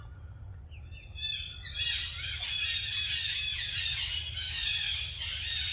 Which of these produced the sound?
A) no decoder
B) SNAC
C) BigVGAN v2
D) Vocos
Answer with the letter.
A